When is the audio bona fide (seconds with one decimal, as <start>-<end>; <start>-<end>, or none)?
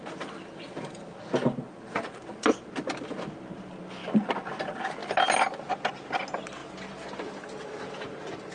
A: 0.0-8.5